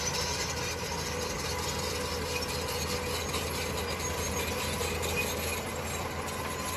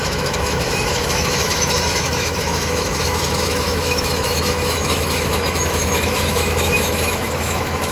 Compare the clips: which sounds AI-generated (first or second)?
second